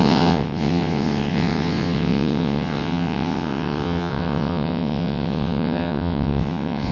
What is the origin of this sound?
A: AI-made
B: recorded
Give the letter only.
A